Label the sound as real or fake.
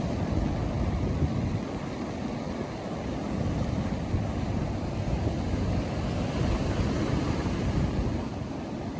real